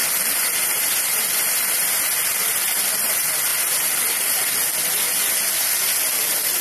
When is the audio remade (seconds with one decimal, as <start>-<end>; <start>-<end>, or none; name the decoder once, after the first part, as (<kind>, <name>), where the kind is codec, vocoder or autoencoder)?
none